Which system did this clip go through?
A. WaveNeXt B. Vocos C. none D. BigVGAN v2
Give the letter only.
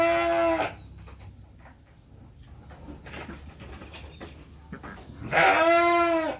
C